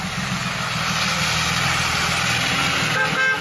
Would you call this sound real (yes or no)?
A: yes